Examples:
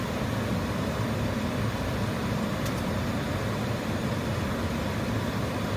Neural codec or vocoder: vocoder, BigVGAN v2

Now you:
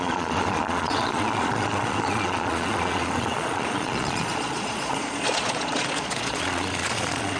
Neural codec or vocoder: vocoder, Vocos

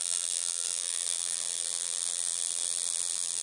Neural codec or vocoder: vocoder, BigVGAN v2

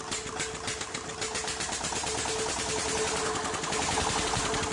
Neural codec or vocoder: none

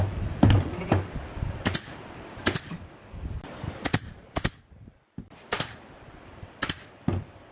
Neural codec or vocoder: none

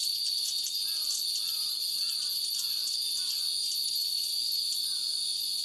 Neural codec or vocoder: none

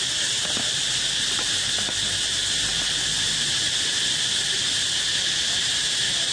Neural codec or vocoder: none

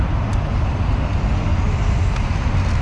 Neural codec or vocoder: none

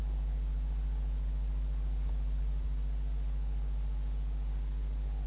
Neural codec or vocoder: none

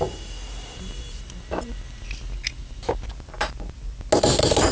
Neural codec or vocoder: none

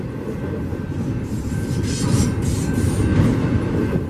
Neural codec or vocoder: none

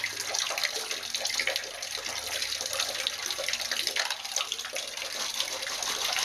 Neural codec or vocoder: none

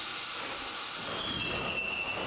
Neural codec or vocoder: none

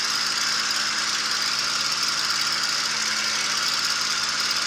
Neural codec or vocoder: none